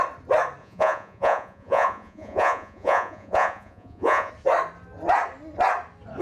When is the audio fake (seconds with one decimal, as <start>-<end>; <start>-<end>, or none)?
0.6-4.3